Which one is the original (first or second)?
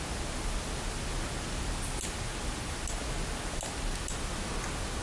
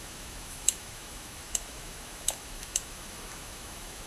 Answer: first